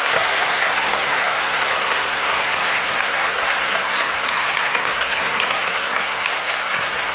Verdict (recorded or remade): remade